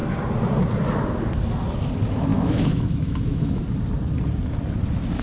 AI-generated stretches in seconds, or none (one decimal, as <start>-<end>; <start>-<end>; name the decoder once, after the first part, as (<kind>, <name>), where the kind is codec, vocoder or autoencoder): 2.3-3.6 (autoencoder, DAC-VAE)